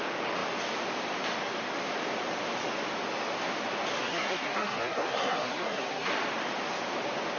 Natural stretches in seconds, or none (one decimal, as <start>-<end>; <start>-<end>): 0.0-4.0; 6.1-7.4